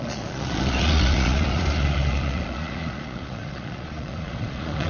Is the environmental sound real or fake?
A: fake